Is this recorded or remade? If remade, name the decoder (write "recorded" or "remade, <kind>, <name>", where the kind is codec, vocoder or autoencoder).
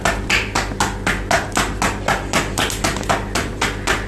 recorded